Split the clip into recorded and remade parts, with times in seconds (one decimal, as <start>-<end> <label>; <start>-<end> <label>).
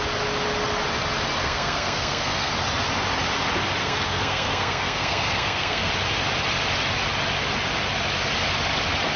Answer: 0.0-1.4 recorded; 1.4-2.5 remade; 2.5-3.8 recorded; 3.8-5.9 remade; 5.9-9.2 recorded